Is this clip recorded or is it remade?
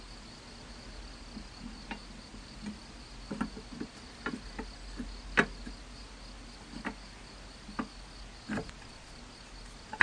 recorded